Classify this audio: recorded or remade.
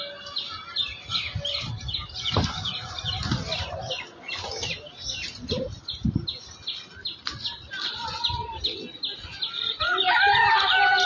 recorded